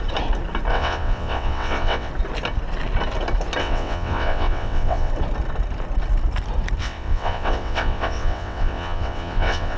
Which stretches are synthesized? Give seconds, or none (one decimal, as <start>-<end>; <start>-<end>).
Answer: 0.7-2.1; 3.6-5.1; 6.8-9.8

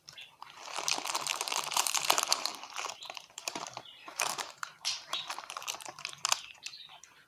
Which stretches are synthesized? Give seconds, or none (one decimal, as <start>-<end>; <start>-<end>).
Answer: 1.3-5.7

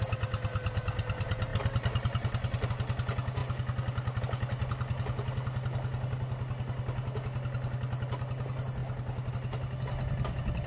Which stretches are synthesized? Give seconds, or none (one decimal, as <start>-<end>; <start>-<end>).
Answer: none